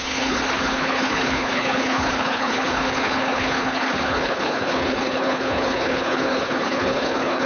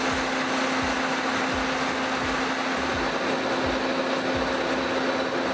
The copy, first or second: first